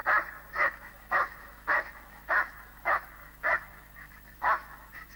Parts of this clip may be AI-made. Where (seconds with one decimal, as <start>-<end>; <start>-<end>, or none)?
0.5-5.2